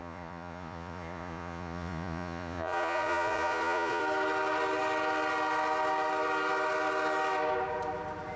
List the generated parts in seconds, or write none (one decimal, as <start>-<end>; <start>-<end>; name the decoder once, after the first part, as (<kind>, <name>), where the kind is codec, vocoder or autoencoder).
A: 0.0-4.0 (vocoder, Vocos)